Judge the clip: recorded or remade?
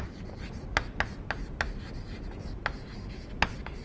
recorded